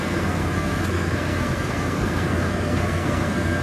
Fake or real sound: fake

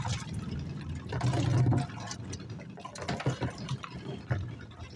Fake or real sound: real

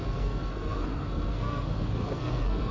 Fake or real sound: fake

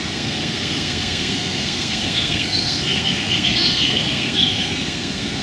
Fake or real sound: fake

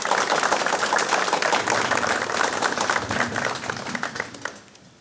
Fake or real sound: real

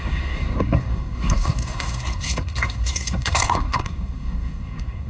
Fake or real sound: fake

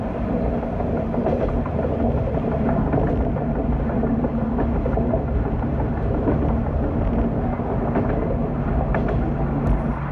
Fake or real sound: real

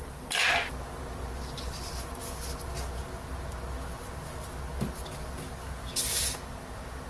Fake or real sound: real